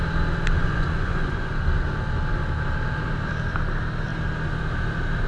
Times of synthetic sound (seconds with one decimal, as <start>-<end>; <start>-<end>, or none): 0.6-1.5